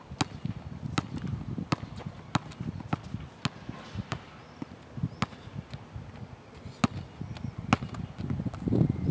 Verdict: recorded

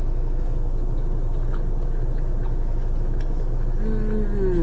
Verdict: recorded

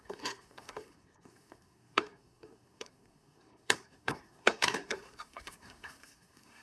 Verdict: remade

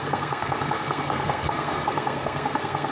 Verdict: remade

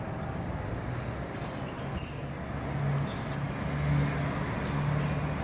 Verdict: recorded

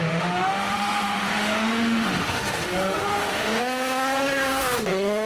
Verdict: remade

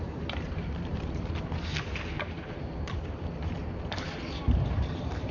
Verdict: remade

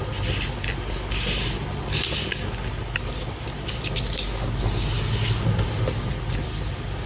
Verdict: recorded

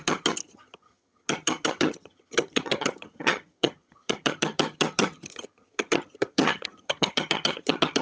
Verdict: remade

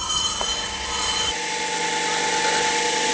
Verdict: recorded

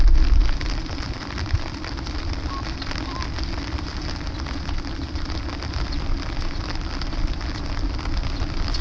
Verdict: recorded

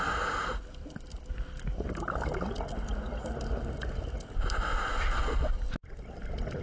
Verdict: recorded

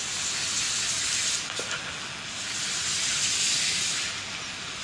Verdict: recorded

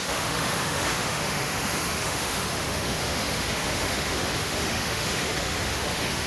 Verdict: remade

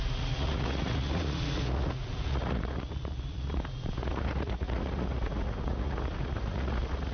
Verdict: remade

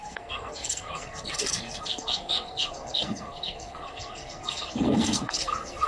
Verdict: remade